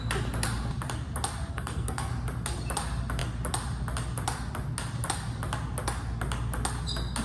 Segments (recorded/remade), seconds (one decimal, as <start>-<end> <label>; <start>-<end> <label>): 0.0-1.5 recorded; 1.5-2.1 remade; 2.1-7.2 recorded